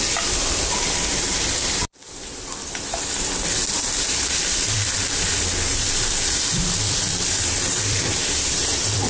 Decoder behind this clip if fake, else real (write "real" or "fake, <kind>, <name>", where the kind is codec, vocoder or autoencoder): fake, vocoder, BigVGAN v2